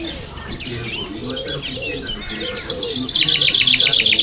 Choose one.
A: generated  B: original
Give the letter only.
B